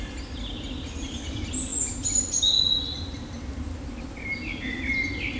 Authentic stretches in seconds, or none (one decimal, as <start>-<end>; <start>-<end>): 0.0-5.4